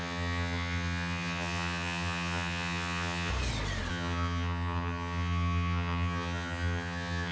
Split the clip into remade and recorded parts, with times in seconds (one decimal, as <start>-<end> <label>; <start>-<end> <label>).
0.0-3.3 remade; 3.3-3.9 recorded; 3.9-7.3 remade